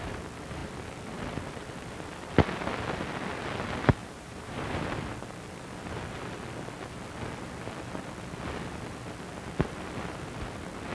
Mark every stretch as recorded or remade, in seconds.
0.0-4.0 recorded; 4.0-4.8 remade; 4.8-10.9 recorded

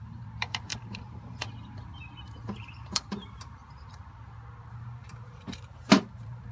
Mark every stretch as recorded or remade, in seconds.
0.0-4.0 remade; 4.0-4.7 recorded; 4.7-6.5 remade